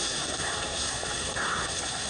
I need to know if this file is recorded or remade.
remade